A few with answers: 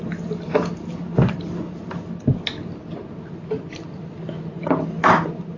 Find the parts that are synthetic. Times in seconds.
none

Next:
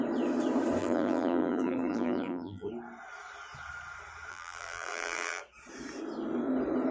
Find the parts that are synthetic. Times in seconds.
0.8-2.7 (vocoder, BigVGAN v2); 4.3-5.4

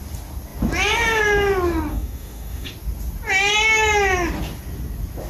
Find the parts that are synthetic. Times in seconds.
1.9-2.7 (codec, DAC)

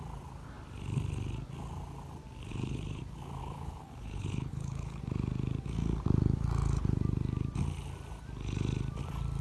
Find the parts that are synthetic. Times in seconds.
2.5-3.0 (codec, HILCodec); 3.4-5.0

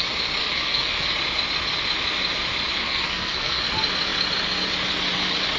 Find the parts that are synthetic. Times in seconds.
0.4-1.1 (codec, SNAC); 2.8-3.6